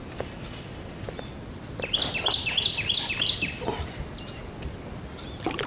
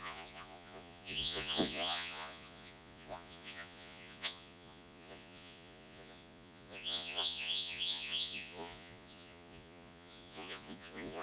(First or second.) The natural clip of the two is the first